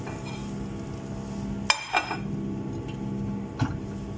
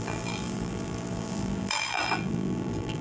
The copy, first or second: second